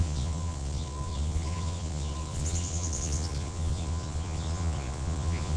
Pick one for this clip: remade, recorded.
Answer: remade